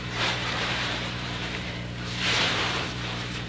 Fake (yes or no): yes